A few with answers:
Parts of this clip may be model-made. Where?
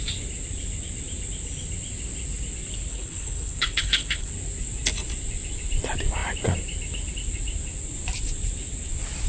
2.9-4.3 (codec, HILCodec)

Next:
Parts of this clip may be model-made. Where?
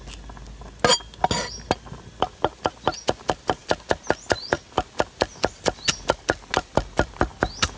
none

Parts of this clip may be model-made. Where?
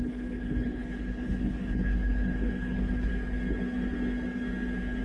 0.0-3.1 (codec, HILCodec)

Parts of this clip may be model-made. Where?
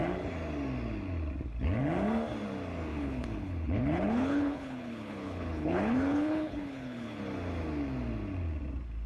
2.9-7.2 (codec, HILCodec)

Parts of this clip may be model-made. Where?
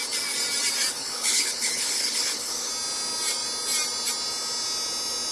0.9-2.7 (codec, HILCodec)